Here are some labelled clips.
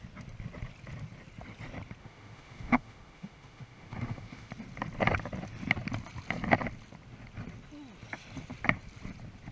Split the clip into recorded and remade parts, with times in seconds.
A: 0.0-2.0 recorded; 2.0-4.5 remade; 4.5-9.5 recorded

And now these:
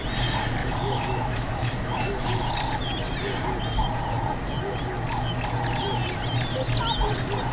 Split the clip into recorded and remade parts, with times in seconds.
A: 0.0-0.6 recorded; 0.6-2.5 remade; 2.5-7.5 recorded

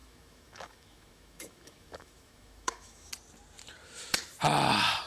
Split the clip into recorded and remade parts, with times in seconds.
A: 0.0-3.1 remade; 3.1-5.1 recorded

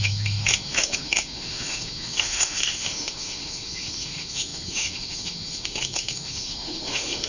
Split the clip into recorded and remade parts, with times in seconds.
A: 0.0-7.3 remade

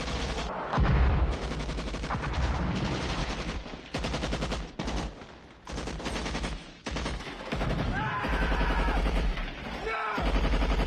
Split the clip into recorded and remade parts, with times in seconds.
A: 0.0-0.7 recorded; 0.7-1.9 remade; 1.9-6.2 recorded; 6.2-9.4 remade; 9.4-10.9 recorded

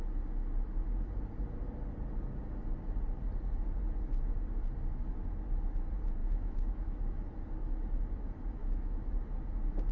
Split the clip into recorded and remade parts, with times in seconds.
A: 0.0-6.2 recorded; 6.2-7.0 remade; 7.0-8.6 recorded; 8.6-9.1 remade; 9.1-9.9 recorded

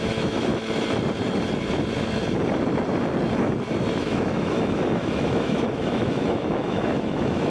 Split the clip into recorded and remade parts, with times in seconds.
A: 0.0-0.5 remade; 0.5-4.0 recorded; 4.0-7.5 remade